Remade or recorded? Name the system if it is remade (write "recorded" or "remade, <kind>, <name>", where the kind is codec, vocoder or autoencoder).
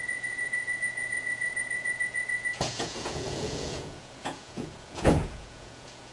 remade, vocoder, Vocos